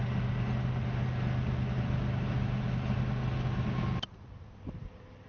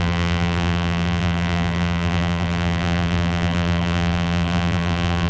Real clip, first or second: first